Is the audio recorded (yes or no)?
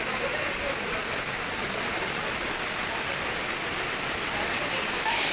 yes